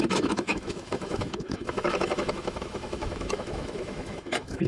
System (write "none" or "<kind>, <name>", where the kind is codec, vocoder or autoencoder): autoencoder, DAC-VAE